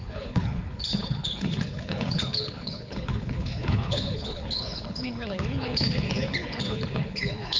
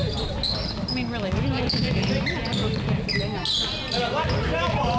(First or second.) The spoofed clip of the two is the first